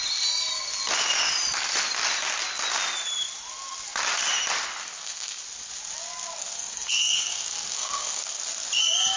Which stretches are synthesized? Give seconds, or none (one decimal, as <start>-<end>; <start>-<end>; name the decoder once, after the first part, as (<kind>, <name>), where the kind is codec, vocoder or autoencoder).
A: 4.8-5.4 (codec, SNAC); 6.4-8.4